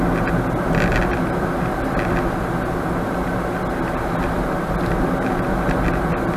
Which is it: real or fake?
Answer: real